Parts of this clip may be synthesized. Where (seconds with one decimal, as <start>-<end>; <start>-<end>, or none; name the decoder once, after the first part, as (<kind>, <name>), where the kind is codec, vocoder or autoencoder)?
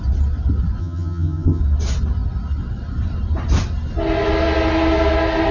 0.8-1.6 (vocoder, HiFi-GAN)